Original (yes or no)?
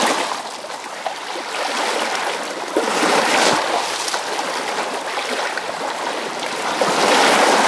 yes